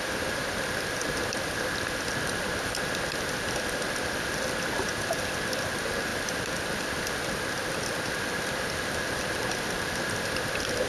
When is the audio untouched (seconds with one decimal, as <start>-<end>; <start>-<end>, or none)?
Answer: 0.0-6.1; 8.1-10.9

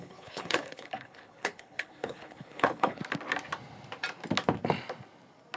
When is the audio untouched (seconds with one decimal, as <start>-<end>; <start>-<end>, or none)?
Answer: 3.0-5.6

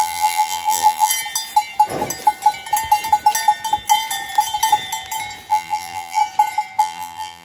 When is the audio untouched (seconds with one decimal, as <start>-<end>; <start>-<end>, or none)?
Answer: 1.1-5.5; 6.2-6.8